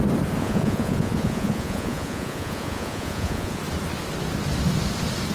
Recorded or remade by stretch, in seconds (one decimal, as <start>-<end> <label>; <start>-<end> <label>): 0.0-0.4 recorded; 0.4-3.6 remade; 3.6-5.3 recorded